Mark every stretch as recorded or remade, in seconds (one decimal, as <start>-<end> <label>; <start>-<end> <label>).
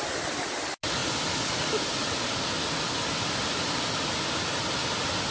0.0-5.3 recorded